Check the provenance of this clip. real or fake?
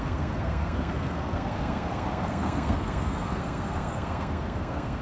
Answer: fake